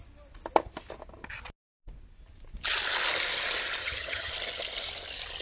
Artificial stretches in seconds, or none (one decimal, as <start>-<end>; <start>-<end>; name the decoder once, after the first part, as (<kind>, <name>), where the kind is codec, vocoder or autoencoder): 3.8-4.3 (vocoder, HiFi-GAN)